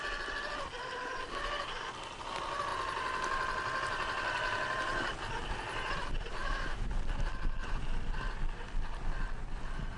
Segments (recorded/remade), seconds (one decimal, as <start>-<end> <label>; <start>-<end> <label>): 0.0-6.4 recorded; 6.4-6.9 remade; 6.9-10.0 recorded